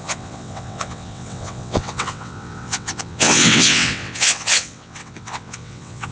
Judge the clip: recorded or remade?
remade